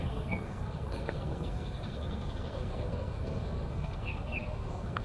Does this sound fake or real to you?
fake